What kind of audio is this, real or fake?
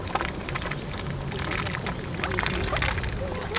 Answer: real